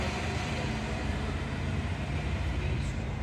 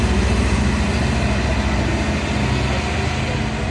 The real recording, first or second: second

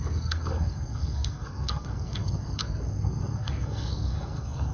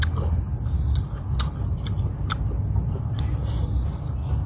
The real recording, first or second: second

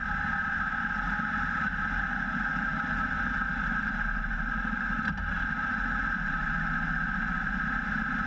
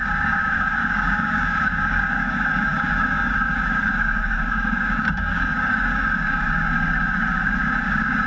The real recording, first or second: first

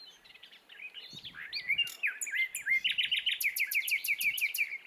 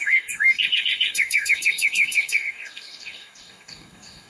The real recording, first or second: first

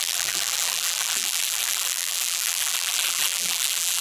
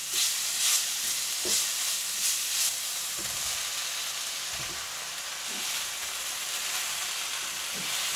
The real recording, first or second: second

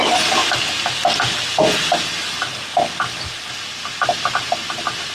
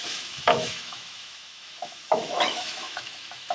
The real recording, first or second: first